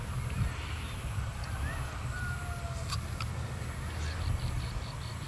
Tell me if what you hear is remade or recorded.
recorded